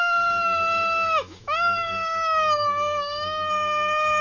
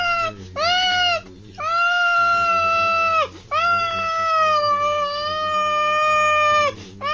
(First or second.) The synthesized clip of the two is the first